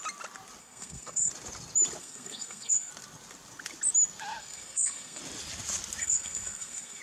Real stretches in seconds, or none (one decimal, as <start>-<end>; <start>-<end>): 0.0-0.6; 1.3-2.0; 2.9-4.4; 5.2-6.0